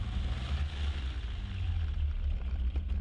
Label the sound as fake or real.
real